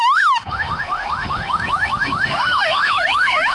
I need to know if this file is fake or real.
fake